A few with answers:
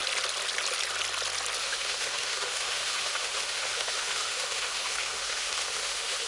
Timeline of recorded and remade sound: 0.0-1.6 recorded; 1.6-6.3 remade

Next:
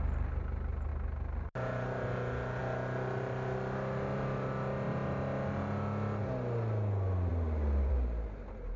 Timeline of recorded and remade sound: 0.0-8.8 recorded

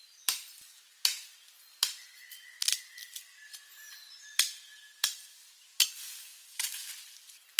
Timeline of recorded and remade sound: 0.0-6.2 recorded; 6.2-6.9 remade; 6.9-7.6 recorded